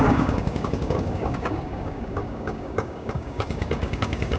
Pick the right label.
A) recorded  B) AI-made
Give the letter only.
B